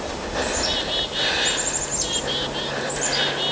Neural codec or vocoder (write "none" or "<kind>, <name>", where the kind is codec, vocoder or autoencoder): none